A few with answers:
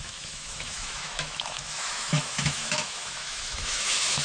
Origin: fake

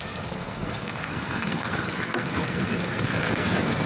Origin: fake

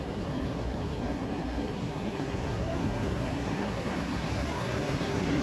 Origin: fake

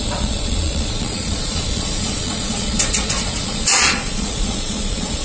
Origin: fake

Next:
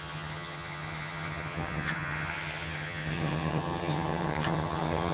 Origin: fake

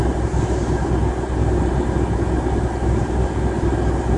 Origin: real